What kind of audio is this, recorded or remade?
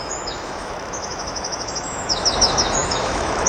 remade